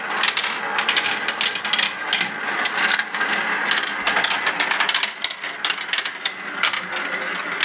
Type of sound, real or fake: real